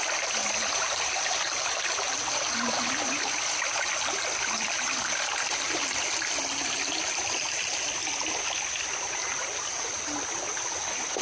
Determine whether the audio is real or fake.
real